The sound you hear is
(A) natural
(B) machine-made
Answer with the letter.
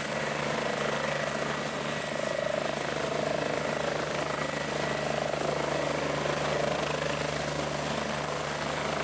A